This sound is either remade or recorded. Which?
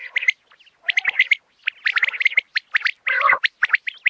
recorded